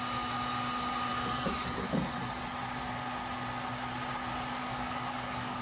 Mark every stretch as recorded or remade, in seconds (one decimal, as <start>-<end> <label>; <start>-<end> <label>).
0.0-4.6 recorded; 4.6-5.6 remade